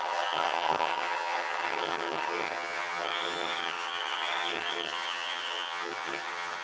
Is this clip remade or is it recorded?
remade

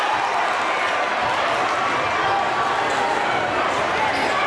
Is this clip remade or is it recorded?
recorded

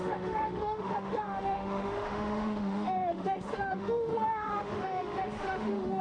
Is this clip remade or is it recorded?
remade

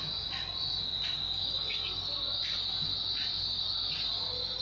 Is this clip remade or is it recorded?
recorded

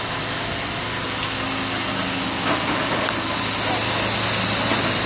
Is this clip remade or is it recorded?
recorded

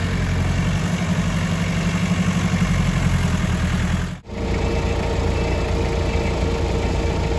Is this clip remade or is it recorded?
recorded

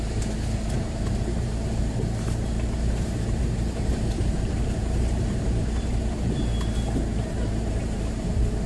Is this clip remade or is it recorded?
remade